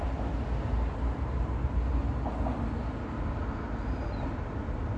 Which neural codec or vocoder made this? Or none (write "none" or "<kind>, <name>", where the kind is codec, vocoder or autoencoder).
none